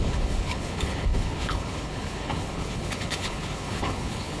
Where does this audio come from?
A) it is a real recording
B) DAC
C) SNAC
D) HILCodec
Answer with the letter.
D